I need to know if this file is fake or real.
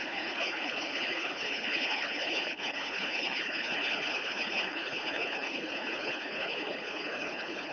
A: fake